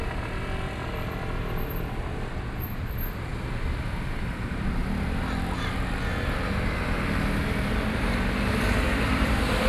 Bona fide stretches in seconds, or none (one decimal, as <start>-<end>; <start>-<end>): 3.3-3.9; 4.8-8.8